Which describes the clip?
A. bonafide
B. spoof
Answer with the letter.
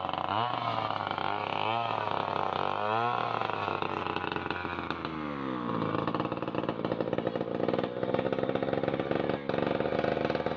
A